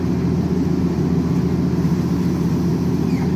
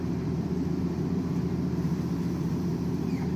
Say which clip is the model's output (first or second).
second